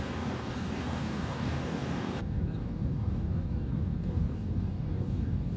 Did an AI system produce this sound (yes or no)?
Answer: yes